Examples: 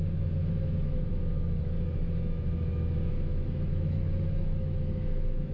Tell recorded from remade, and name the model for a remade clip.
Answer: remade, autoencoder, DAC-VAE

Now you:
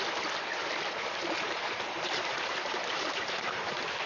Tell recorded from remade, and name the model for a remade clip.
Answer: recorded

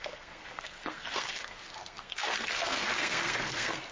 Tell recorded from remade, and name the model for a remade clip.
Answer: remade, codec, SNAC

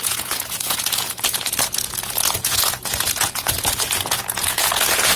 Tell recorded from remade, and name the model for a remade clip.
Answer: remade, vocoder, Vocos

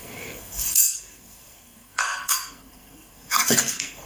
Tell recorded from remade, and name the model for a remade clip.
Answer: remade, codec, SNAC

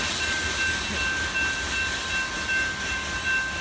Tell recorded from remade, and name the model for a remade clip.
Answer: recorded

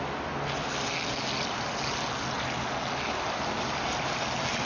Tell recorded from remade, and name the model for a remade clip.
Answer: recorded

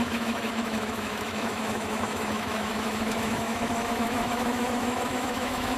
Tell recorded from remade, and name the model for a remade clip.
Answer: remade, autoencoder, DAC-VAE